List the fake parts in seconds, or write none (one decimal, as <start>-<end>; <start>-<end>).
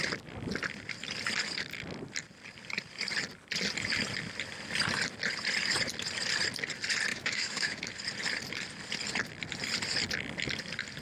7.1-7.8